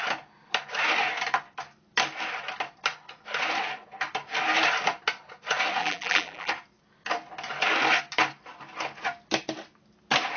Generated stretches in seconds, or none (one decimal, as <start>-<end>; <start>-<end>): 5.8-6.5